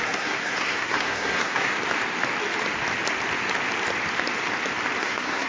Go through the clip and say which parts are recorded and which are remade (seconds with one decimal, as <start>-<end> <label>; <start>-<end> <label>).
0.0-1.7 remade; 1.7-5.0 recorded; 5.0-5.5 remade